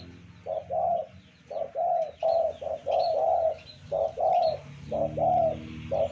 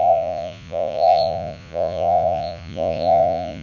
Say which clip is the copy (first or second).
second